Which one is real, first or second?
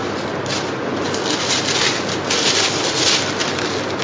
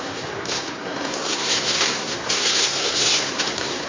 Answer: first